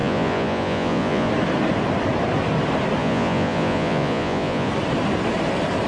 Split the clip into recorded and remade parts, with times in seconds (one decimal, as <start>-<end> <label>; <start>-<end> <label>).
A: 0.0-1.3 remade; 1.3-3.0 recorded; 3.0-4.7 remade; 4.7-5.9 recorded